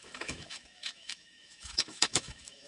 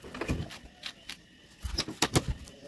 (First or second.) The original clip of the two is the second